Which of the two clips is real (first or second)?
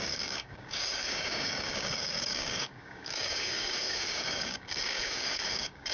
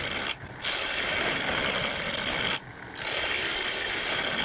second